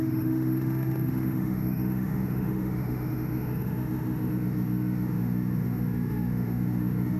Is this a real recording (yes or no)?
no